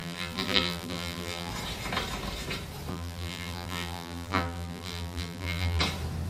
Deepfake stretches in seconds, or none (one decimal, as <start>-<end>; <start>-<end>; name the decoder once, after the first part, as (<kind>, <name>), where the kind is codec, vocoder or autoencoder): 0.0-1.5 (vocoder, BigVGAN v2); 2.9-5.8